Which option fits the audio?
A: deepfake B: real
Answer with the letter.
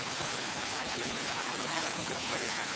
A